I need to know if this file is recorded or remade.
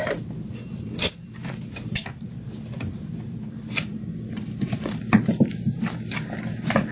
remade